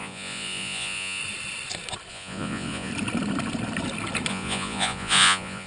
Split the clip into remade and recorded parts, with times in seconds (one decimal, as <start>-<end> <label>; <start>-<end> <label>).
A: 0.0-1.2 remade; 1.2-2.1 recorded; 2.1-2.9 remade; 2.9-4.3 recorded; 4.3-5.7 remade